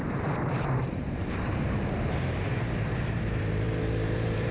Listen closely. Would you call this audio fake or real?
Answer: fake